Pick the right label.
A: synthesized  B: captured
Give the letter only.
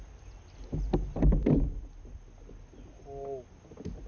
B